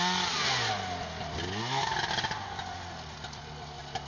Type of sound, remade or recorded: recorded